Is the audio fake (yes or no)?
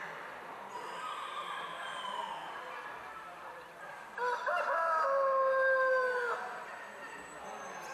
no